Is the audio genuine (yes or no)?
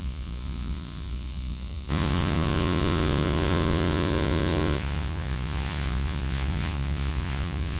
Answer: no